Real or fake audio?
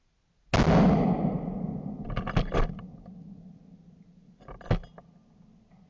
real